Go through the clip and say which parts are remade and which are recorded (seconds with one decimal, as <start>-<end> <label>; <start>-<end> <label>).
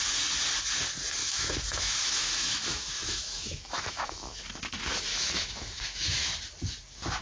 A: 0.0-1.2 recorded; 1.2-4.4 remade; 4.4-5.1 recorded; 5.1-6.3 remade; 6.3-7.2 recorded